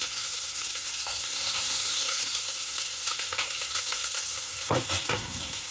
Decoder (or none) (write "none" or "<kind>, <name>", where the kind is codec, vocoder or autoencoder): codec, SNAC